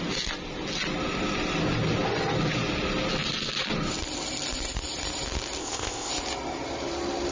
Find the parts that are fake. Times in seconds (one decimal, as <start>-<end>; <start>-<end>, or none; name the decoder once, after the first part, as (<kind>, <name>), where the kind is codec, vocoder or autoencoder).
5.6-6.1 (codec, ZipCodec)